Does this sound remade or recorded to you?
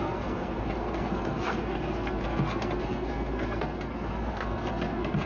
remade